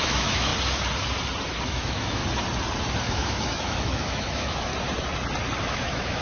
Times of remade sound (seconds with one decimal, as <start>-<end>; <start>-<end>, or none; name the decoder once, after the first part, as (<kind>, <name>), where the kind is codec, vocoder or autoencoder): 0.0-0.5 (autoencoder, DAC-VAE); 1.6-2.2; 3.0-4.7; 5.6-6.2